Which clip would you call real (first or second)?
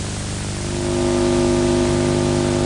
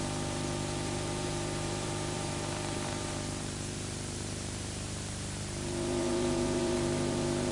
first